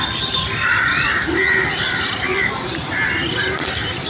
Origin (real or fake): real